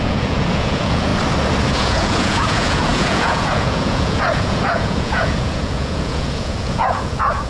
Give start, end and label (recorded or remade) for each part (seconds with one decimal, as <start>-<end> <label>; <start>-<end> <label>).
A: 0.0-1.1 remade; 1.1-1.7 recorded; 1.7-7.5 remade